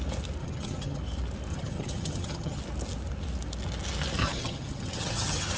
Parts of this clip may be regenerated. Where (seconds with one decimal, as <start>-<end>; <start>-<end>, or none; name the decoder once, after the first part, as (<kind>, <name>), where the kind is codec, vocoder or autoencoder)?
0.4-1.0 (vocoder, HiFi-GAN); 1.5-2.6; 4.2-5.6